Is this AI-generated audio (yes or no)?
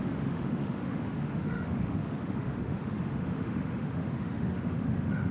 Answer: yes